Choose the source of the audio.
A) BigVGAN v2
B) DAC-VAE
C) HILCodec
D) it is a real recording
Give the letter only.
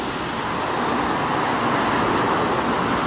D